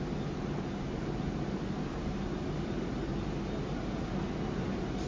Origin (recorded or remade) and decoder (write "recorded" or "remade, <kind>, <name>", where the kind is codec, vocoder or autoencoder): recorded